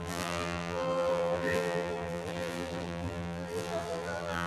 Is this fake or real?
fake